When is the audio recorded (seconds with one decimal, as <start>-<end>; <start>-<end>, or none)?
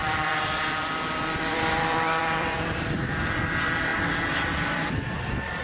3.9-4.7